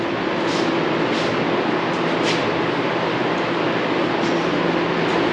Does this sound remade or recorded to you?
recorded